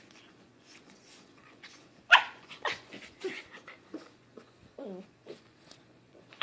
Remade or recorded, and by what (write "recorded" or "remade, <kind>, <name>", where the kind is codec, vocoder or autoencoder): remade, vocoder, Vocos